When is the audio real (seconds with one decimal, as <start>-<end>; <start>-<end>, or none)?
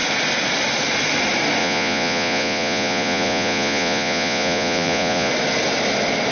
0.0-1.6; 5.3-6.3